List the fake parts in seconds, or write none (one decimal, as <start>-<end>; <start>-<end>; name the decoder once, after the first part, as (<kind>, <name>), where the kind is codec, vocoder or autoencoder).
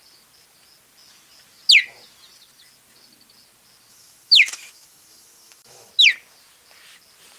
3.9-5.9 (autoencoder, DAC-VAE)